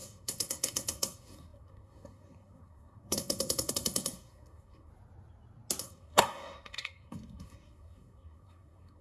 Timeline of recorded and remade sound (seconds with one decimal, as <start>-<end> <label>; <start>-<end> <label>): 0.0-4.9 remade; 4.9-5.8 recorded; 5.8-9.0 remade